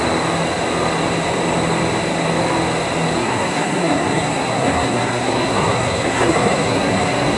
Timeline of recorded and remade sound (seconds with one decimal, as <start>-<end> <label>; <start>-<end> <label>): 0.0-3.2 recorded; 3.2-7.4 remade